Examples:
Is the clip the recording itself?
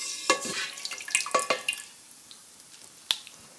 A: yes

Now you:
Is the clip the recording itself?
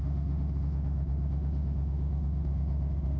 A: no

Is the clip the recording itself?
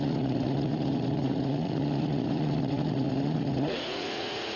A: no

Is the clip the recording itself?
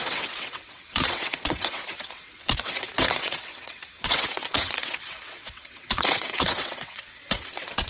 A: no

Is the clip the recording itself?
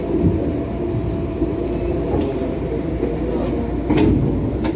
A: yes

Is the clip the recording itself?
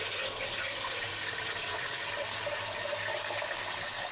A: yes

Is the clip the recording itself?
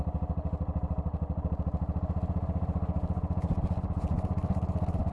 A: yes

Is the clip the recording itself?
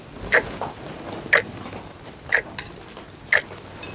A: yes